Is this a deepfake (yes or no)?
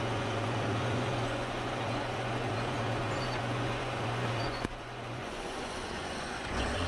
yes